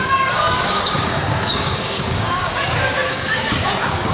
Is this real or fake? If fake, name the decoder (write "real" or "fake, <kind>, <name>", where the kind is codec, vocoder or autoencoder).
fake, codec, DAC